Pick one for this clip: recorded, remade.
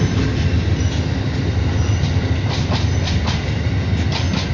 recorded